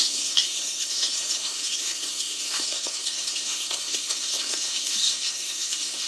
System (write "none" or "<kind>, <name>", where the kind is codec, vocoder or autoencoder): codec, SNAC